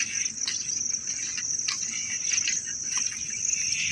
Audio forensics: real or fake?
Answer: real